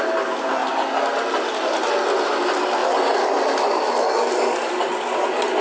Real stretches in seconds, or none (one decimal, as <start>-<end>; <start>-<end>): 0.0-5.6